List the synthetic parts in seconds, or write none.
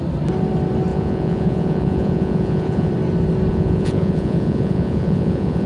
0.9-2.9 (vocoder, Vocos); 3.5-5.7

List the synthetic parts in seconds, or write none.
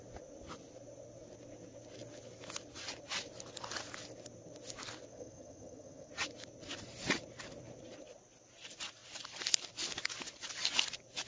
5.1-6.1 (vocoder, HiFi-GAN)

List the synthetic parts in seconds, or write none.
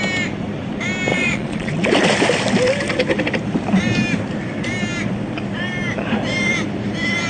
1.1-1.7 (vocoder, Vocos)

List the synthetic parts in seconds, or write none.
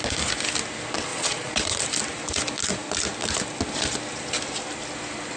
1.1-1.6 (vocoder, Vocos)